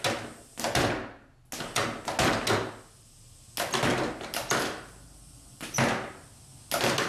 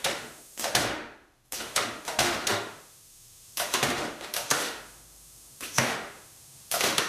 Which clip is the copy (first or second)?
second